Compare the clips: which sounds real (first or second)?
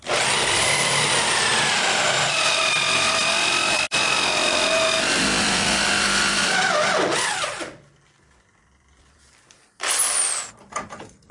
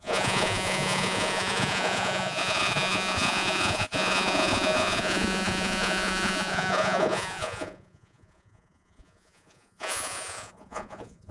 first